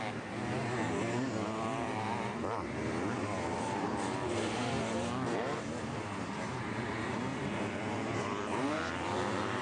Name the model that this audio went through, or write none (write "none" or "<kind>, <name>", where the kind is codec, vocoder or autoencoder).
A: none